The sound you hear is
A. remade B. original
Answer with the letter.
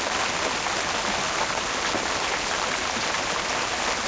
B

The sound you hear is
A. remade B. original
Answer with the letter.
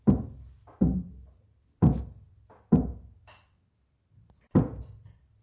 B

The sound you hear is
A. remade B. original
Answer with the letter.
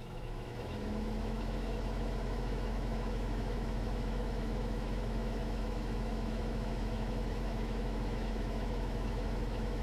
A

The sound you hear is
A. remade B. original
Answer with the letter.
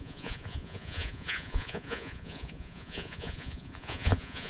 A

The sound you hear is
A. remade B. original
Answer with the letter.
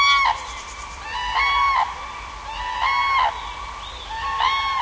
B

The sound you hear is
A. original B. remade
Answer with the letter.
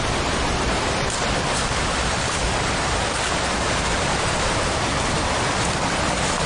A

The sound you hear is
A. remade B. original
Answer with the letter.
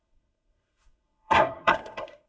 A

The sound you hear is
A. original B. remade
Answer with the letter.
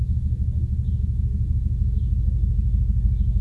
A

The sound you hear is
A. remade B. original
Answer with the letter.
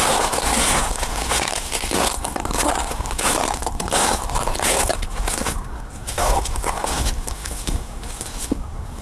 A